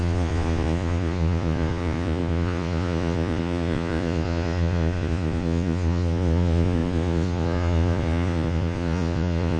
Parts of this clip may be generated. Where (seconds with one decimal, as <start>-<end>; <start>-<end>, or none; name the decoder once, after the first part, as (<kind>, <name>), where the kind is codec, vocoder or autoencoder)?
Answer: 0.0-9.6 (vocoder, Vocos)

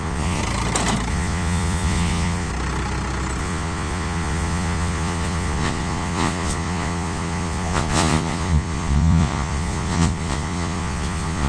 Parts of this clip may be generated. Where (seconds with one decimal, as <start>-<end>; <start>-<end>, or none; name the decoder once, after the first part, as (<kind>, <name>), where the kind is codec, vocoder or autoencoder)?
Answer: 0.0-0.4 (vocoder, Vocos); 1.1-2.5; 3.4-11.5

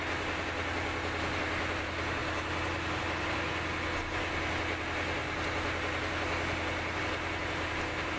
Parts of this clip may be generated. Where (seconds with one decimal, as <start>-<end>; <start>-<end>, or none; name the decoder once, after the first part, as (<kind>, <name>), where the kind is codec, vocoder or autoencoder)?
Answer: none

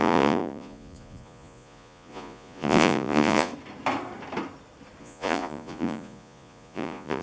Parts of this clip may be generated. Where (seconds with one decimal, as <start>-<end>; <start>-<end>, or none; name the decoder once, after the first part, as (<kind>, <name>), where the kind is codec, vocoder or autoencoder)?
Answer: 0.0-3.5 (vocoder, Vocos); 5.0-7.2

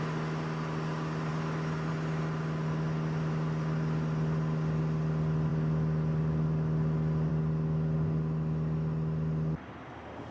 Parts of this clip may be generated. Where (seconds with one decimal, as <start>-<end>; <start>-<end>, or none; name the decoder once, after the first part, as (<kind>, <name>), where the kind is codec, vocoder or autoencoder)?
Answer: none

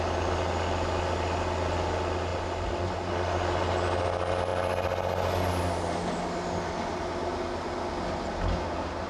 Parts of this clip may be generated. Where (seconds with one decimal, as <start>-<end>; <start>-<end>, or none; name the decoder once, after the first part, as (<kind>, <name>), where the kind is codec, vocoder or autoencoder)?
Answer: none

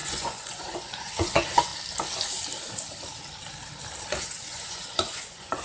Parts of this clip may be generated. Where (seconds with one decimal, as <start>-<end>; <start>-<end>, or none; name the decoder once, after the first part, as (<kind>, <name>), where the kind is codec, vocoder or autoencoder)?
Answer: 0.0-1.7 (vocoder, Vocos); 4.2-5.6